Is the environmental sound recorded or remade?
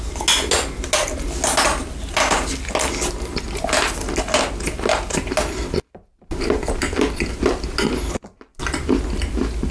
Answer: recorded